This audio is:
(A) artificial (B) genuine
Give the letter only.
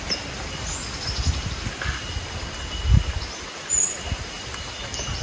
B